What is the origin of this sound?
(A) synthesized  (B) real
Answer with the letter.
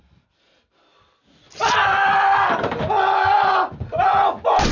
B